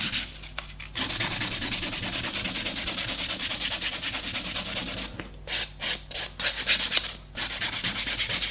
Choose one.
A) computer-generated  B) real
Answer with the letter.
B